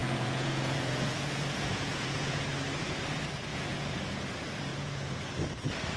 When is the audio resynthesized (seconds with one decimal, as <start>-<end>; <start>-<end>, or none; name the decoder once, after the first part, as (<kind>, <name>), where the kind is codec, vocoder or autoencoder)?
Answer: 0.0-2.4 (vocoder, Vocos); 3.5-4.2; 4.7-5.2